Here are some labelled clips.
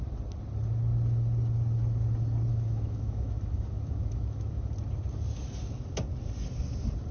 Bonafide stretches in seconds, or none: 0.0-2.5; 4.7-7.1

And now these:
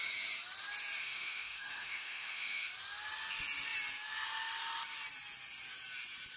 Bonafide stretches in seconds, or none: 0.0-1.0; 2.7-6.4

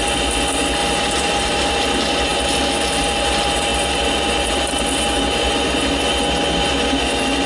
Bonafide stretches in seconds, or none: 0.0-0.8; 1.7-7.5

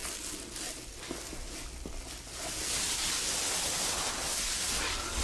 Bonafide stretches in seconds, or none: 0.0-5.2

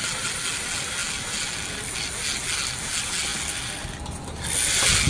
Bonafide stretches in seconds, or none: 0.0-5.1

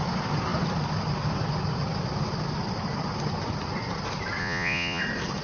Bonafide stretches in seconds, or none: 0.0-4.4; 5.0-5.4

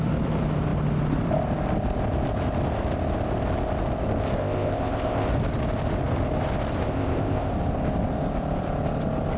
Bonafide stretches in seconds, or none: 0.0-4.4; 5.3-6.8; 7.5-9.4

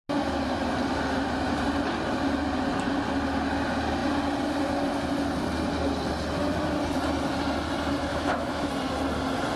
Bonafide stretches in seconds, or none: 0.0-8.1; 8.7-9.6